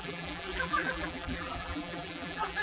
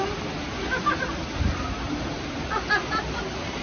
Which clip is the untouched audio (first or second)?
second